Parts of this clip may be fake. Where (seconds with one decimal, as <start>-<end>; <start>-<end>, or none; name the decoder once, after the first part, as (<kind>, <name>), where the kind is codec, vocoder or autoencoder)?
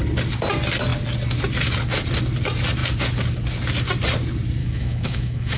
4.6-5.6 (autoencoder, DAC-VAE)